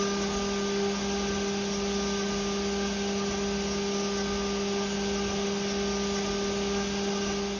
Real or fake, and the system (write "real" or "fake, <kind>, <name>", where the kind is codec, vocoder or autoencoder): real